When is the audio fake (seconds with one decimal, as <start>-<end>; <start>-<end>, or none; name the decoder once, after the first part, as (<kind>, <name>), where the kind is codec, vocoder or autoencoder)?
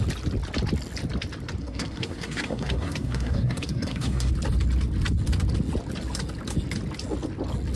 1.6-4.3 (codec, SNAC)